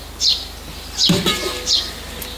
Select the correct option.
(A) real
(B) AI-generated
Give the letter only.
A